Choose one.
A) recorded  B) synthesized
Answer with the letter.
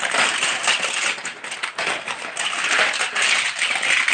A